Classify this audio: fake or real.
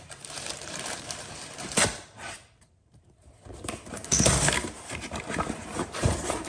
fake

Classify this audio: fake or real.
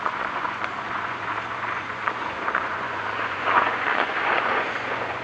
fake